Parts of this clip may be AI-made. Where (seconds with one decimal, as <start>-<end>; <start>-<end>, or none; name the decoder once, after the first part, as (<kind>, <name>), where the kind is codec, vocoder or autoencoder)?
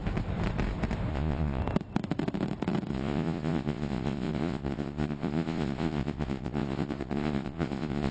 1.1-1.6 (vocoder, Vocos); 2.9-8.1